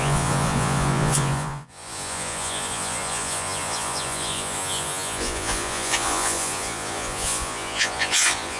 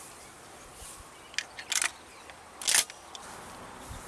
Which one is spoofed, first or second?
first